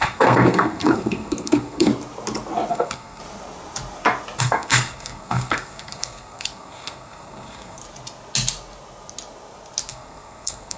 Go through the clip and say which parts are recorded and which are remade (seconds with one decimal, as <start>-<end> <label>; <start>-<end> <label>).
0.0-1.9 remade; 1.9-2.7 recorded; 2.7-3.2 remade; 3.2-4.4 recorded; 4.4-7.8 remade; 7.8-9.9 recorded; 9.9-10.8 remade